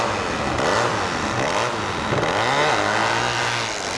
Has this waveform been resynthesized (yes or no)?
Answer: no